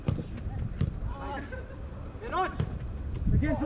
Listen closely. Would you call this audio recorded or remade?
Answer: recorded